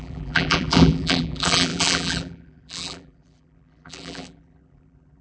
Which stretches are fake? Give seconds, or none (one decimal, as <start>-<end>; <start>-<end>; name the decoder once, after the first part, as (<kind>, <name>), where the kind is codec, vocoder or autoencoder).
0.0-5.2 (vocoder, BigVGAN v2)